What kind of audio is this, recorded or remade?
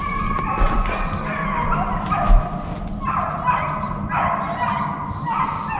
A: recorded